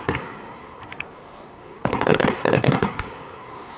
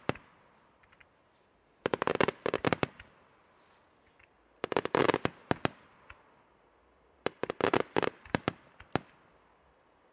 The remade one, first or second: first